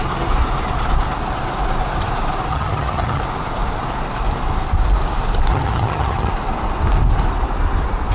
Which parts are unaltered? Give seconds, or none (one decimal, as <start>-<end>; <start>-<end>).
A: 0.0-2.5; 3.2-5.5; 6.3-8.1